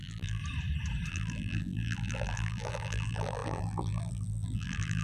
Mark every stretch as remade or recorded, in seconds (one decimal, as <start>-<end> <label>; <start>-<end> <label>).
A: 0.0-0.4 remade; 0.4-1.1 recorded; 1.1-5.0 remade